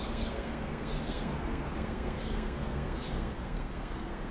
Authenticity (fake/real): fake